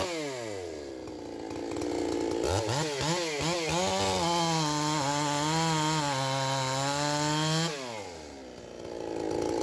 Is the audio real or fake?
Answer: real